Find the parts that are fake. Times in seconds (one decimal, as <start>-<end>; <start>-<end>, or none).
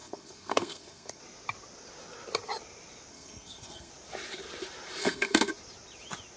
0.0-1.2; 3.1-3.9; 5.0-5.5